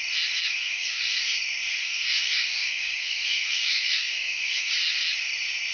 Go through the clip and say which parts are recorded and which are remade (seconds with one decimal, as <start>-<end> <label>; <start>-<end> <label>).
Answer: 0.0-0.5 recorded; 0.5-1.2 remade; 1.2-1.8 recorded; 1.8-4.7 remade; 4.7-5.7 recorded